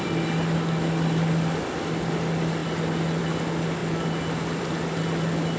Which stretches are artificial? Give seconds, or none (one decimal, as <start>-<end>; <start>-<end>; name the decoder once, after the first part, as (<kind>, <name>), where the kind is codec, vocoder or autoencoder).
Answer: none